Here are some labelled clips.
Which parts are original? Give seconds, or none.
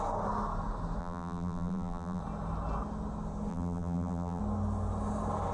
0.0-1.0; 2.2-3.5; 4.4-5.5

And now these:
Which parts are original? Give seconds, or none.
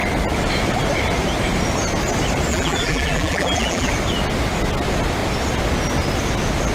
0.0-2.5; 3.9-6.7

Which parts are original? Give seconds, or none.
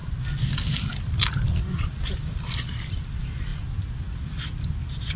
3.1-3.5; 4.4-5.2